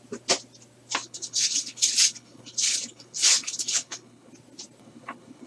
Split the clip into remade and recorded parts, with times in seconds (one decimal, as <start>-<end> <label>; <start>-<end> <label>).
0.0-1.0 recorded; 1.0-4.3 remade; 4.3-4.8 recorded; 4.8-5.5 remade